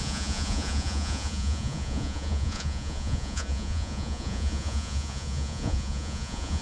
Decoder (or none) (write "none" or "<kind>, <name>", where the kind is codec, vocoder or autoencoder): vocoder, Vocos